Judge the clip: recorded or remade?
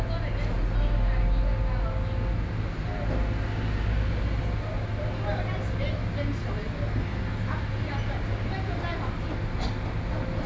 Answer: recorded